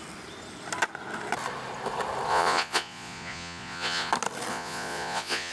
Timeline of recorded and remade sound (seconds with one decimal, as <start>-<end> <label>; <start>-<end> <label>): 0.0-2.3 recorded; 2.3-4.1 remade; 4.1-4.5 recorded; 4.5-5.5 remade